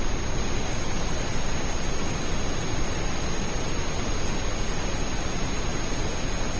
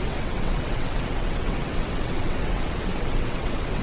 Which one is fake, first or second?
second